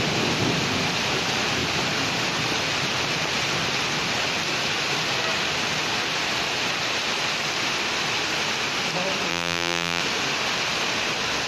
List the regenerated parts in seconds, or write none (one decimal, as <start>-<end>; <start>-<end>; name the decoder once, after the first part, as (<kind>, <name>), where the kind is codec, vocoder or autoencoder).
9.3-10.0 (vocoder, BigVGAN v2)